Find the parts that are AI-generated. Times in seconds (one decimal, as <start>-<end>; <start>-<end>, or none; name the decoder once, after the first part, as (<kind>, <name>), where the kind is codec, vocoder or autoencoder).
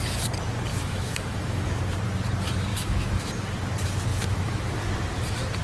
0.7-1.8 (autoencoder, DAC-VAE); 2.7-3.3; 4.1-4.8